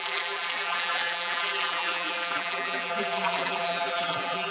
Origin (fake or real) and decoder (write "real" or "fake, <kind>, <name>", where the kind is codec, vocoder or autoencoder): fake, vocoder, BigVGAN v2